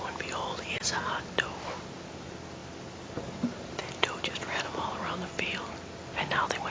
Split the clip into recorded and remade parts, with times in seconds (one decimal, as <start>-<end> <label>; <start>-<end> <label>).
0.0-6.7 recorded